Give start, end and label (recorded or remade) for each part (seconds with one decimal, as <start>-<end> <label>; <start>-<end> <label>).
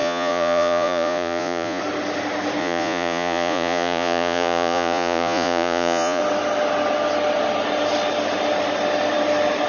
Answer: 0.0-1.8 remade; 1.8-2.6 recorded; 2.6-6.2 remade; 6.2-9.7 recorded